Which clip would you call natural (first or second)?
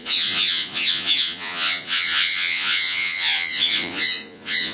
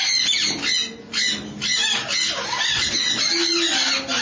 second